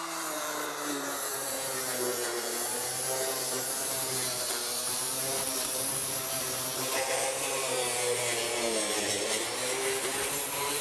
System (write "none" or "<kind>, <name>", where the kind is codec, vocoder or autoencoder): vocoder, BigVGAN v2